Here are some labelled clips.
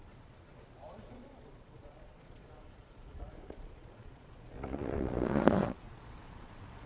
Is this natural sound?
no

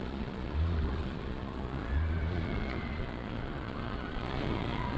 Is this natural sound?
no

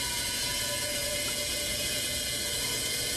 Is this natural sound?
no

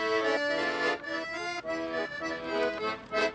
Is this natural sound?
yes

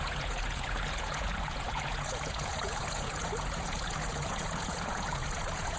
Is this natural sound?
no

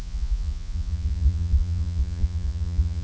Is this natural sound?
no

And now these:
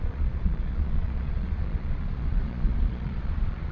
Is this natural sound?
no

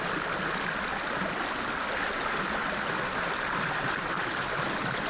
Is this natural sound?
yes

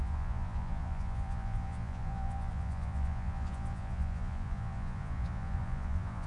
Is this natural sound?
no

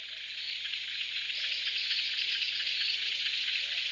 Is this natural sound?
no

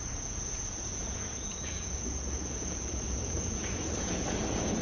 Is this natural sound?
no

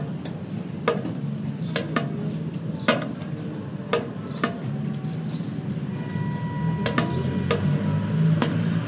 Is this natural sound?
yes